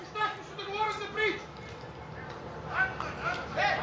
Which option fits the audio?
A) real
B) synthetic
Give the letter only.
A